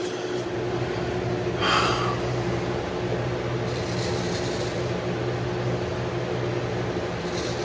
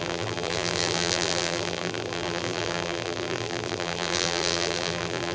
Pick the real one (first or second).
first